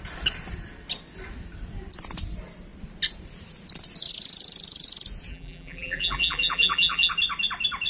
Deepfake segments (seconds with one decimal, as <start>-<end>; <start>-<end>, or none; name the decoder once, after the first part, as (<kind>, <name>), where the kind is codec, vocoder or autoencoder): 5.3-7.1 (vocoder, BigVGAN v2)